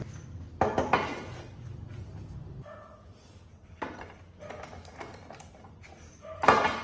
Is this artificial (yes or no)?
no